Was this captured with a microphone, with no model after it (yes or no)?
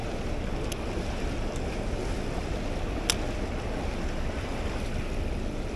yes